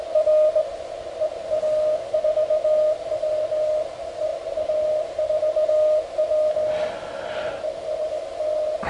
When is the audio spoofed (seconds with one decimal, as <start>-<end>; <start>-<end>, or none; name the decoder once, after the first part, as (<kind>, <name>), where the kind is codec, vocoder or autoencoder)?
none